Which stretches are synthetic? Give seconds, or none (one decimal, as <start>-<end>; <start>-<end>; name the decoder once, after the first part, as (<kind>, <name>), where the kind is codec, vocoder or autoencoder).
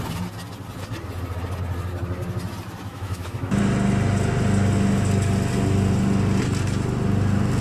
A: 2.9-3.6 (autoencoder, DAC-VAE)